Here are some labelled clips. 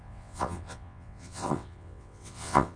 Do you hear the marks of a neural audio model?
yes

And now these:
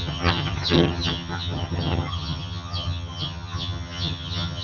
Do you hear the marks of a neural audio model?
yes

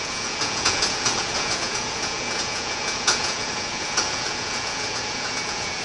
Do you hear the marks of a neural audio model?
yes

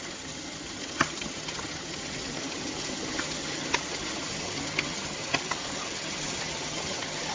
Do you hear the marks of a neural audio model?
yes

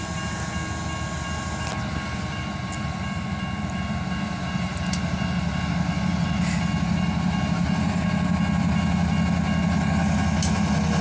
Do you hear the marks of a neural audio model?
no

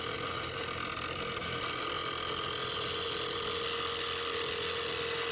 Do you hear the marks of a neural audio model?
no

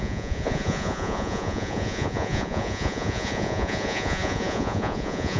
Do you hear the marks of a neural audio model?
yes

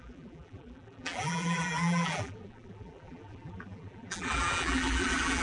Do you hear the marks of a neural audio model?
yes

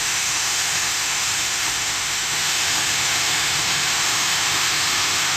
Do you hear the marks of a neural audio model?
yes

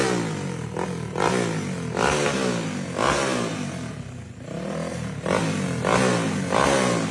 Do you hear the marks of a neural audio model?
no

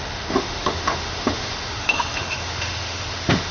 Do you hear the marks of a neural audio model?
yes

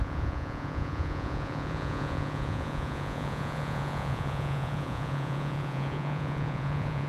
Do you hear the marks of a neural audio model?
yes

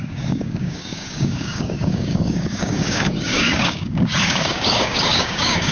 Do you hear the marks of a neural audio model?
yes